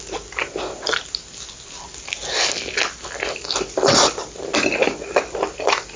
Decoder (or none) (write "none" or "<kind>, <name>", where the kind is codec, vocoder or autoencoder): none